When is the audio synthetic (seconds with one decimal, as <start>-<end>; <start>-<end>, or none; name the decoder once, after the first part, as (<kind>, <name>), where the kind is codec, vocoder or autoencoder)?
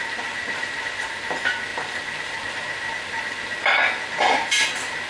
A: none